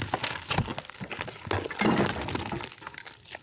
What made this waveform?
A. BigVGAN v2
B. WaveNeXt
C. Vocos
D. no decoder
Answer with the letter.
D